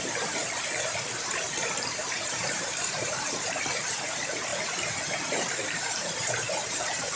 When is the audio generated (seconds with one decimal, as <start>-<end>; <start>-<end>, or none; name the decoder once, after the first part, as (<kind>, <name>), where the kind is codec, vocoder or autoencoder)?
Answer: 0.0-0.4 (vocoder, BigVGAN v2); 1.1-4.5; 5.2-7.2